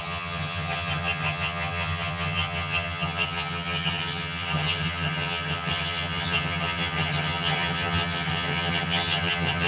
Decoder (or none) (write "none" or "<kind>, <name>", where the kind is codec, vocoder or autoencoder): vocoder, HiFi-GAN